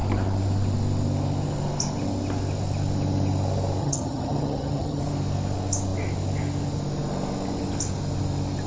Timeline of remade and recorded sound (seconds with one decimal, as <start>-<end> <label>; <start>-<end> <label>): 0.0-3.8 recorded; 3.8-5.0 remade; 5.0-8.7 recorded

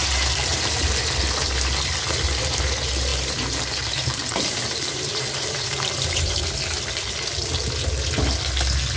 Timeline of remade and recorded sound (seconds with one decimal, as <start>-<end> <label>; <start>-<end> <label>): 0.0-0.9 remade; 0.9-3.1 recorded; 3.1-6.4 remade; 6.4-9.0 recorded

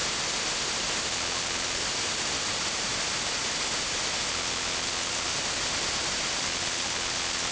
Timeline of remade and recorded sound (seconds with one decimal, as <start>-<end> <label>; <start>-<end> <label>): 0.0-1.1 recorded; 1.1-1.8 remade; 1.8-4.3 recorded; 4.3-5.3 remade; 5.3-6.4 recorded; 6.4-7.5 remade

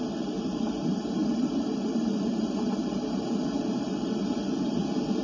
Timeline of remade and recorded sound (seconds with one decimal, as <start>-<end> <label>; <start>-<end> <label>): 0.0-5.2 remade

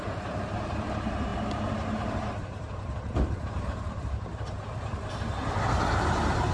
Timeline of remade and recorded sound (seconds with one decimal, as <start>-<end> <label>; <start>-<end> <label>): 0.0-6.5 remade

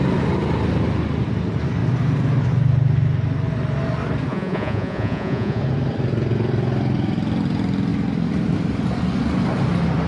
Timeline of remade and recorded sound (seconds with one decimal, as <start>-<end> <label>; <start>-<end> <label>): 0.0-4.3 recorded; 4.3-5.6 remade; 5.6-10.1 recorded

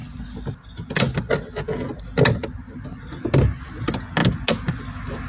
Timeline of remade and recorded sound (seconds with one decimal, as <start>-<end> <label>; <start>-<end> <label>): 0.0-5.3 recorded

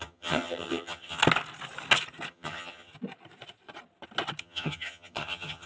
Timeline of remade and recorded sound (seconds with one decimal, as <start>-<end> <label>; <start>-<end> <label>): 0.0-1.2 remade; 1.2-2.3 recorded; 2.3-2.9 remade; 2.9-4.4 recorded; 4.4-5.7 remade